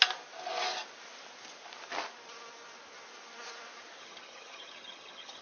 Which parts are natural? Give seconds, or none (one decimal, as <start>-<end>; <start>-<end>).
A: 0.0-4.0